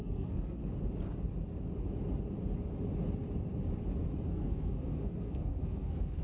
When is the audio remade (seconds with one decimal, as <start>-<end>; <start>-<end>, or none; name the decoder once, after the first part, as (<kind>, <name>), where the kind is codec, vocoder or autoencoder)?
0.0-0.6 (codec, SNAC); 4.3-6.2